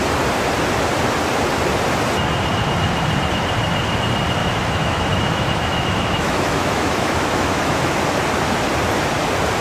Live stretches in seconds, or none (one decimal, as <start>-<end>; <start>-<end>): 0.0-4.4; 8.0-9.6